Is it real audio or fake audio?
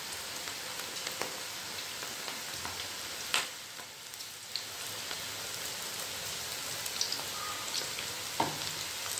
real